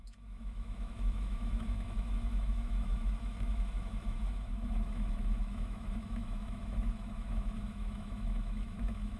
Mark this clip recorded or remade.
remade